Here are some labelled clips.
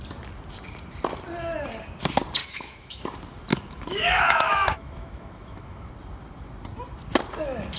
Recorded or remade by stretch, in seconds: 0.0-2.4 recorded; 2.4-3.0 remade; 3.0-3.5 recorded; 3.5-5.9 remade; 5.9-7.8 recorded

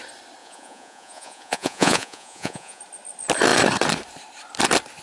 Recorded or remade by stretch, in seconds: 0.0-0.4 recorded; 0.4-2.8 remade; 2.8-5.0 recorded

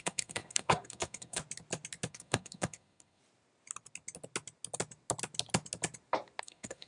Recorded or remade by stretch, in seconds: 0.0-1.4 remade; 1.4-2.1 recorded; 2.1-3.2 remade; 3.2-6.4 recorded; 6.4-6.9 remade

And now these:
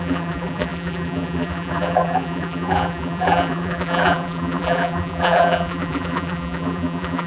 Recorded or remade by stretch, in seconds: 0.0-7.3 remade

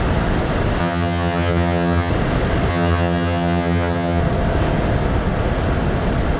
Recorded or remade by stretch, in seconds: 0.0-0.8 recorded; 0.8-2.1 remade; 2.1-2.7 recorded; 2.7-4.2 remade; 4.2-6.4 recorded

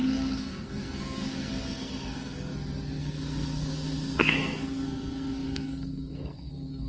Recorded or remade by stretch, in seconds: 0.0-2.5 remade; 2.5-3.0 recorded; 3.0-6.9 remade

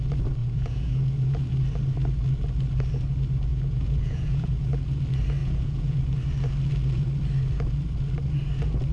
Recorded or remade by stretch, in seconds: 0.0-0.4 recorded; 0.4-1.4 remade; 1.4-3.5 recorded; 3.5-4.7 remade; 4.7-5.4 recorded; 5.4-6.0 remade; 6.0-8.9 recorded